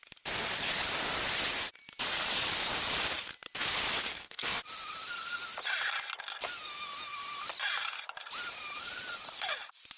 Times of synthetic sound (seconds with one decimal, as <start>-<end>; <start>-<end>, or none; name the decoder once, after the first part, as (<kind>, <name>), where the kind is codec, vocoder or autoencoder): 4.1-4.6 (codec, SNAC)